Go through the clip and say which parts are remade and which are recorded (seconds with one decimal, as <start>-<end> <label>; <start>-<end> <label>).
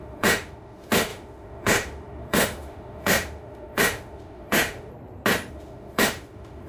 0.0-4.9 remade; 4.9-5.5 recorded; 5.5-6.7 remade